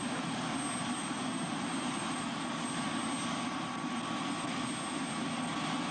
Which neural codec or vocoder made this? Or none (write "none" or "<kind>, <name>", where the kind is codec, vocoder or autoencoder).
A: none